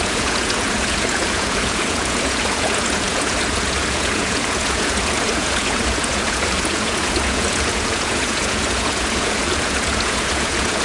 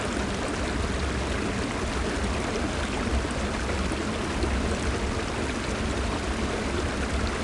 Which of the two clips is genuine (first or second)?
second